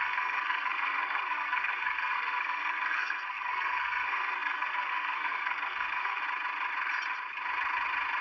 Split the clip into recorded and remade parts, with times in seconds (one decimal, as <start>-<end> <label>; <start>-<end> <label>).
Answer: 0.0-6.2 remade; 6.2-8.2 recorded